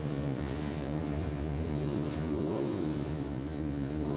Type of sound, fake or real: fake